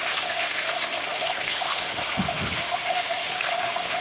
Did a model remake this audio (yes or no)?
yes